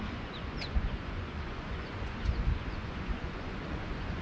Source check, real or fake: fake